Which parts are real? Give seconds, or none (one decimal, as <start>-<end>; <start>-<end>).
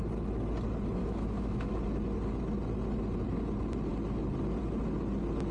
0.0-1.0; 1.7-5.5